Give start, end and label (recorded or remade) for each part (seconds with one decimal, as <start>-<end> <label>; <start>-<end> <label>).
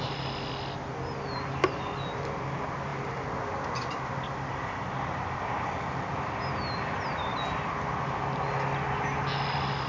0.0-9.9 recorded